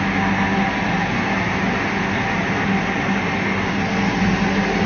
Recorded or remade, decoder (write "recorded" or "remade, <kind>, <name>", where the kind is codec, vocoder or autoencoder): recorded